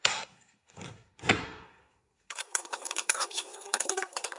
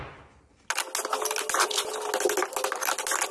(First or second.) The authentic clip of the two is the second